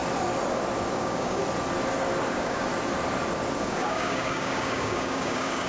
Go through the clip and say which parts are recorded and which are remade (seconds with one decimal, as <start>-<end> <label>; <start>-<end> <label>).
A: 0.0-0.9 recorded; 0.9-1.4 remade; 1.4-2.3 recorded; 2.3-2.7 remade; 2.7-3.6 recorded; 3.6-5.7 remade

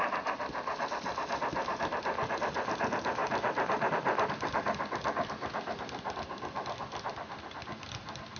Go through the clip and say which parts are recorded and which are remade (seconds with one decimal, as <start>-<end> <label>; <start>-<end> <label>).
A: 0.0-8.4 recorded

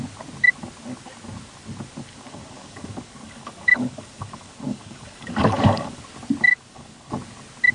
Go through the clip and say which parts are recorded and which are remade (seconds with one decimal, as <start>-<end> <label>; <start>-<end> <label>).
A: 0.0-2.1 recorded; 2.1-6.0 remade; 6.0-6.5 recorded; 6.5-7.1 remade; 7.1-7.7 recorded

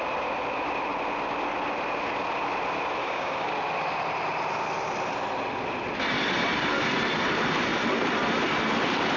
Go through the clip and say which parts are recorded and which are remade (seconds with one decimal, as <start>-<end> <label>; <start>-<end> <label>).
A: 0.0-3.0 recorded; 3.0-3.5 remade; 3.5-9.2 recorded

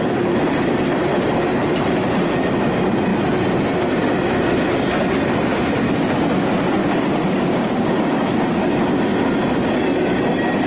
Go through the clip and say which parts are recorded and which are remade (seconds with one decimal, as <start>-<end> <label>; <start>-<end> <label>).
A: 0.0-6.8 recorded; 6.8-8.7 remade; 8.7-10.7 recorded